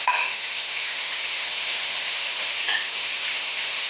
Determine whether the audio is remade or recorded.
remade